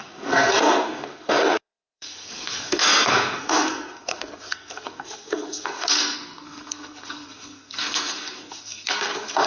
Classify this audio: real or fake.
fake